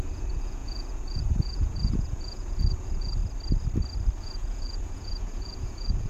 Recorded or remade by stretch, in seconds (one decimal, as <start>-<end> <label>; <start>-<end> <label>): 0.0-3.2 remade; 3.2-4.2 recorded; 4.2-6.1 remade